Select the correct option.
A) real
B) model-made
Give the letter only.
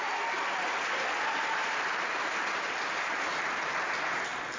A